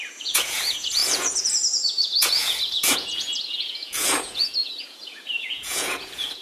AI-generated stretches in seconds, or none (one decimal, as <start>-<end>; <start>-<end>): 0.0-6.4